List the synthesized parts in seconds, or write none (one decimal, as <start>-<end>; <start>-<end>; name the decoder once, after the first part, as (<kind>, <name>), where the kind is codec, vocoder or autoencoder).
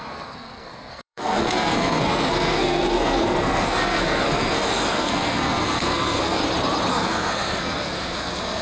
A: 0.0-6.4 (codec, SNAC); 6.9-8.6